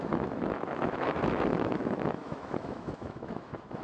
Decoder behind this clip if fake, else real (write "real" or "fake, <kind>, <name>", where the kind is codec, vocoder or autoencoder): fake, autoencoder, DAC-VAE